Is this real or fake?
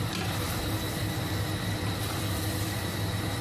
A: real